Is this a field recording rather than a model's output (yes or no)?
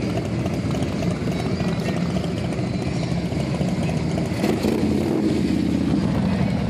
yes